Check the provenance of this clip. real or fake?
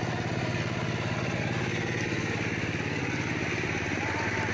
real